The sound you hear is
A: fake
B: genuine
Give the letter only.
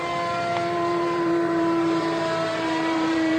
A